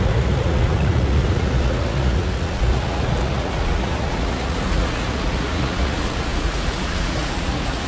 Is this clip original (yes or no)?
no